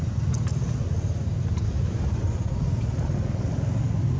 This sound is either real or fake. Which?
real